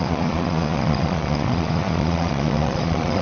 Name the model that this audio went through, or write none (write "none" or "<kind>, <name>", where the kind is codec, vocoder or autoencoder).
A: vocoder, Vocos